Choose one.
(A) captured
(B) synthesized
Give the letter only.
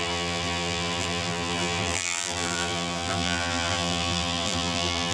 B